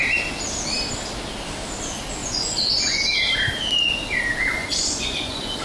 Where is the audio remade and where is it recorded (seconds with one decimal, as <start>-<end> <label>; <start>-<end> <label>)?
0.0-2.2 recorded; 2.2-3.0 remade; 3.0-4.6 recorded; 4.6-5.6 remade